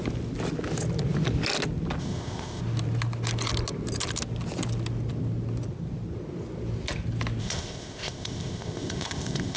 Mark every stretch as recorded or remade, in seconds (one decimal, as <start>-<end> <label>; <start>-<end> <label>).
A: 0.0-2.0 recorded; 2.0-2.6 remade; 2.6-7.4 recorded; 7.4-9.6 remade